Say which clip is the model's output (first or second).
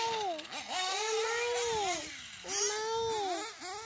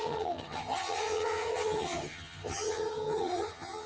second